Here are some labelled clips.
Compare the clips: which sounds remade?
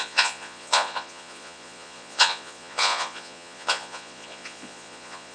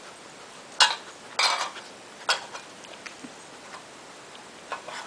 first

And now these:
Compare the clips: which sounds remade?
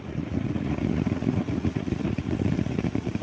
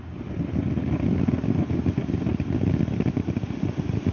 first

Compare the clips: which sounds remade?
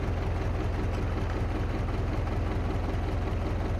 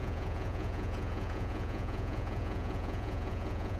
second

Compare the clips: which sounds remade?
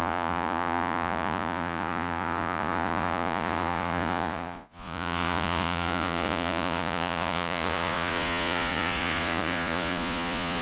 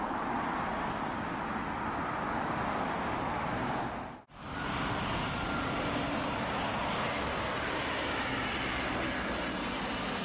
first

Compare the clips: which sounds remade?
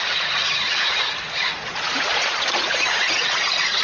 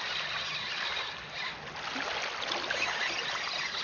first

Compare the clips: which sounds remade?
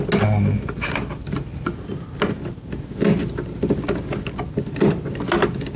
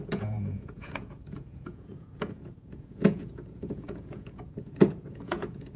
second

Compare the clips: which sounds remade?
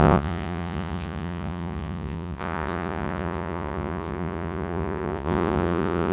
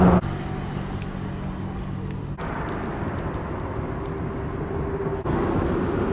first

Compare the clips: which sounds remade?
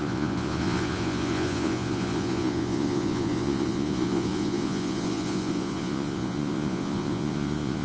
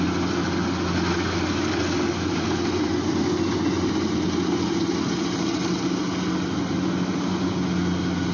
first